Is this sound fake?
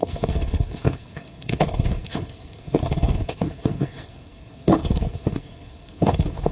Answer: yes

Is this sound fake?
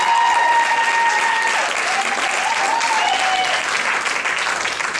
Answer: no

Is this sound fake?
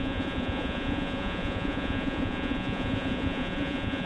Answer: yes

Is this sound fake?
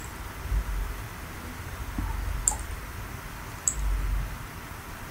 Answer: no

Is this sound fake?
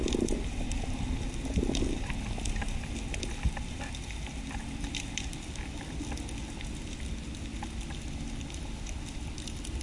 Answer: no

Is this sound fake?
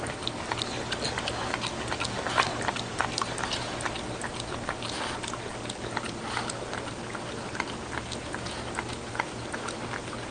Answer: no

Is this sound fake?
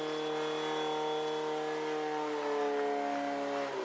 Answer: no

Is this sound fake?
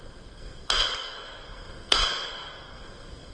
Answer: yes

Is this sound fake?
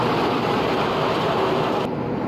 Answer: no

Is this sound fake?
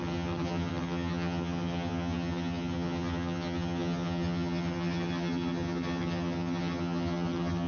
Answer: yes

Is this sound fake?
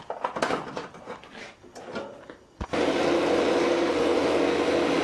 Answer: no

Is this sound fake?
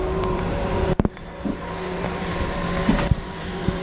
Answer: yes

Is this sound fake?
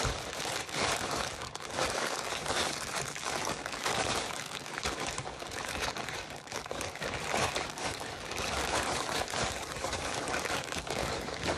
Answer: yes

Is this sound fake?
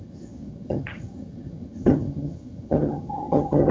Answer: yes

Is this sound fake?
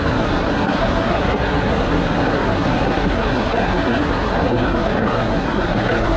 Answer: yes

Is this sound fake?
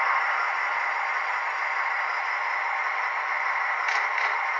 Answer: no